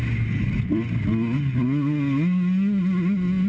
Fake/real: real